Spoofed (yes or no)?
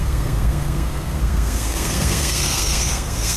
yes